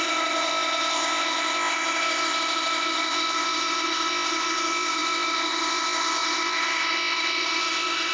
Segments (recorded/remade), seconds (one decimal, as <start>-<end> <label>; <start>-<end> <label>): 0.0-8.1 remade